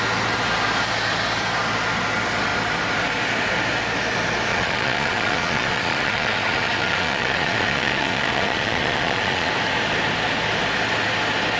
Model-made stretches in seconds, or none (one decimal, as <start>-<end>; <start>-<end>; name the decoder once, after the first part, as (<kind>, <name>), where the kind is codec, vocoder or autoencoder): 4.5-9.5 (vocoder, Vocos)